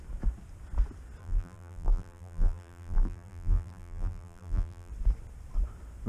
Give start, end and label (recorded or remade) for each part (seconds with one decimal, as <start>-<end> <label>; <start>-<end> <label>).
0.0-1.2 recorded; 1.2-4.9 remade; 4.9-6.1 recorded